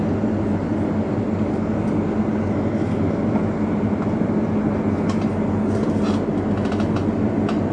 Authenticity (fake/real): real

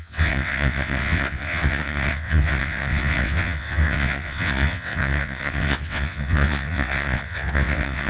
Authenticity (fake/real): fake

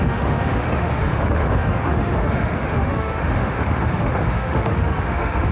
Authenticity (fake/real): fake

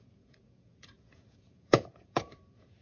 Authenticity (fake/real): fake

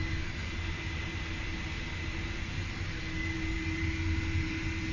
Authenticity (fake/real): real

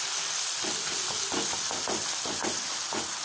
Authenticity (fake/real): real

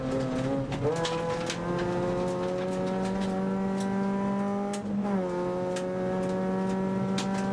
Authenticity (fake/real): real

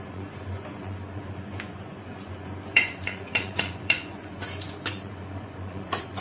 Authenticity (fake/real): fake